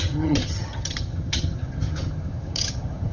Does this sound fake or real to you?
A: fake